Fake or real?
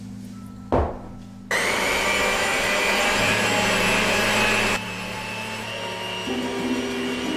real